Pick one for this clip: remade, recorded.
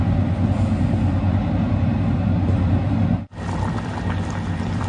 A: recorded